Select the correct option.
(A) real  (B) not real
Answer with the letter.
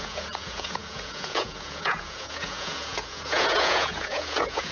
B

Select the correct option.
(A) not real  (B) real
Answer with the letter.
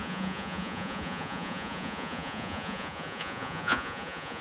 A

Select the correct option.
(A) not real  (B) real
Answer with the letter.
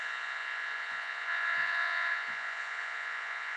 A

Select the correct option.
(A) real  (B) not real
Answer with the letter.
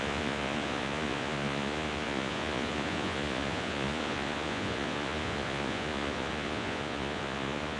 B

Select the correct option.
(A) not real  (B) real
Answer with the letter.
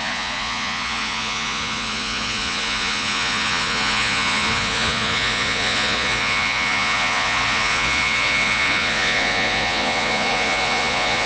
A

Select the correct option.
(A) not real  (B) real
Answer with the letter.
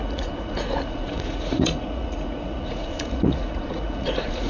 A